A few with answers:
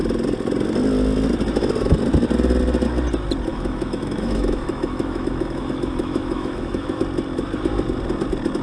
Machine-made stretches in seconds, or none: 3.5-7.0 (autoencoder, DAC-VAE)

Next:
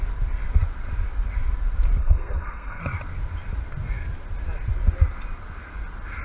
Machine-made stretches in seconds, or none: 2.0-2.8 (codec, SNAC)